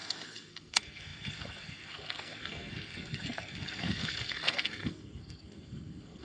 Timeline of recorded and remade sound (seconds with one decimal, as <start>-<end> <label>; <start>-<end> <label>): 0.0-6.2 remade